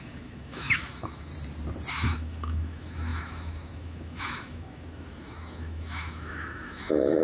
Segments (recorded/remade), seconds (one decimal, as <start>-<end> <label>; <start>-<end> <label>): 0.0-1.3 remade; 1.3-1.9 recorded; 1.9-7.2 remade